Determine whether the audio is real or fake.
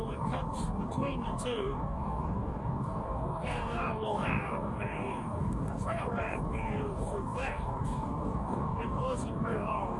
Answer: fake